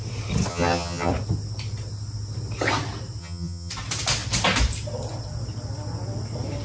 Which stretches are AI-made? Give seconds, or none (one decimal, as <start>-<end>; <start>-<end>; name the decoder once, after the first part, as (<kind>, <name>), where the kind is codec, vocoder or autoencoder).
0.5-1.1 (vocoder, HiFi-GAN); 3.2-3.7